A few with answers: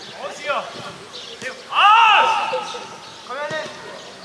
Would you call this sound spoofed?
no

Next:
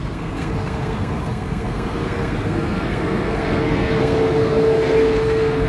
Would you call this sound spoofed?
yes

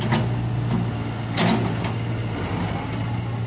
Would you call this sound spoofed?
no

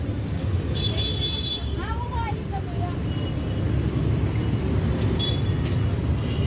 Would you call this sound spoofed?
no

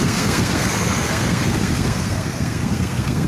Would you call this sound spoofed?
yes